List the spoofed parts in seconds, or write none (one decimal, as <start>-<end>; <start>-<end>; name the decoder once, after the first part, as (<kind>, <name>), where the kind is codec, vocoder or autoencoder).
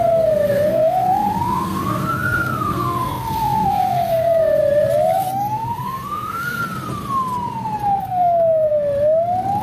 0.0-4.6 (codec, SNAC); 5.2-6.6; 8.0-8.7